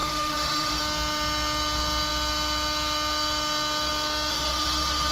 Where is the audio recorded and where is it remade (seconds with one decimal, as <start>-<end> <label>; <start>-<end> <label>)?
0.0-0.8 remade; 0.8-4.3 recorded; 4.3-5.1 remade